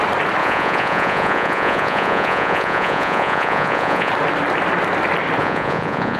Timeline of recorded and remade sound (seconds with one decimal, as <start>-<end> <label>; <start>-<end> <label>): 0.0-0.4 recorded; 0.4-4.1 remade; 4.1-5.4 recorded; 5.4-6.2 remade